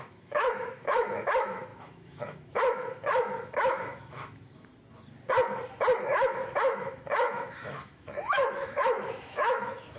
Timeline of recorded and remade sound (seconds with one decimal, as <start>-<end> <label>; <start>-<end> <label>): 0.0-4.7 remade; 4.7-6.1 recorded; 6.1-10.0 remade